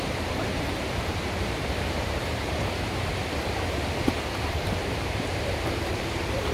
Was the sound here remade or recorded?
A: remade